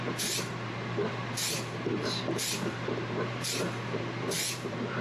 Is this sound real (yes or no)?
no